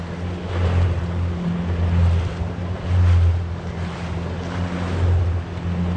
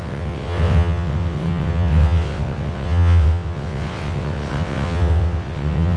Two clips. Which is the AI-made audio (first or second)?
second